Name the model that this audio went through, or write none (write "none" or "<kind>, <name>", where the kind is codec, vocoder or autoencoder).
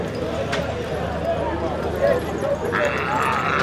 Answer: none